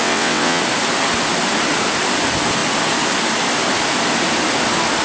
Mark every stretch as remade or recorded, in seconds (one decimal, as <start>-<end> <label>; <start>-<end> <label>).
0.0-0.6 remade; 0.6-5.0 recorded